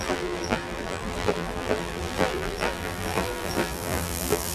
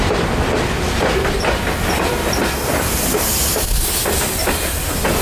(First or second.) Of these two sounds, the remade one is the first